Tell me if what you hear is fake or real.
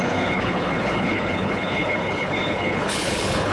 fake